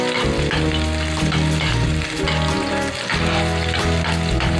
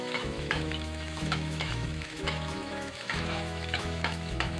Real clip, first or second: first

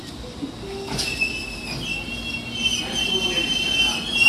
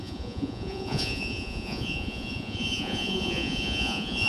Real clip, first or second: first